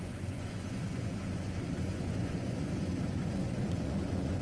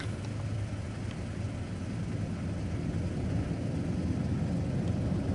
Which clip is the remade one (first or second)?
first